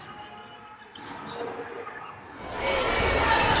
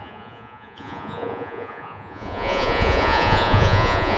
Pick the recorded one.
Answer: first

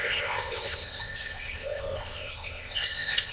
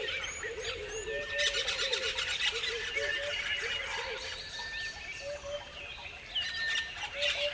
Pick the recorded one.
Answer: second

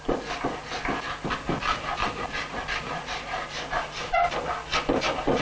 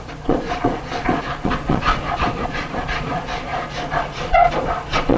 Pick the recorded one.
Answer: first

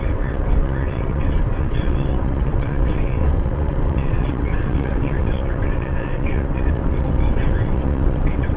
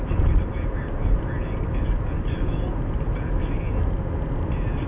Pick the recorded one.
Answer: second